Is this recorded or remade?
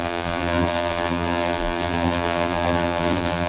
remade